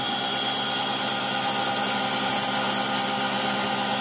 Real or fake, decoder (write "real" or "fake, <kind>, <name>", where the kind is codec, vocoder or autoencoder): real